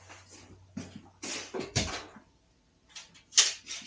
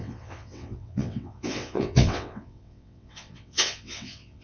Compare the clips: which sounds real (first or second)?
first